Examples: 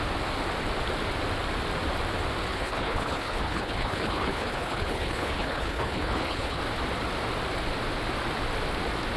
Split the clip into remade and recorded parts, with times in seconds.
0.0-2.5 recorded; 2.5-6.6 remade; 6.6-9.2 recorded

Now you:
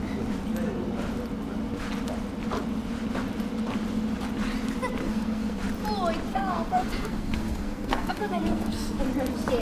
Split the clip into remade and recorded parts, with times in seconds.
0.0-5.0 recorded; 5.0-5.6 remade; 5.6-6.3 recorded; 6.3-9.0 remade; 9.0-9.6 recorded

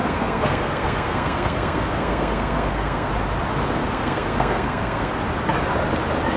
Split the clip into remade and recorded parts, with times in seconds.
0.0-3.1 remade; 3.1-3.8 recorded; 3.8-5.1 remade; 5.1-6.4 recorded